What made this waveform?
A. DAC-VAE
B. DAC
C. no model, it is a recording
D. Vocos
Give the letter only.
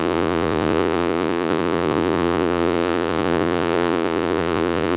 D